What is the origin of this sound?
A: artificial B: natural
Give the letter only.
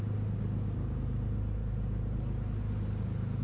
B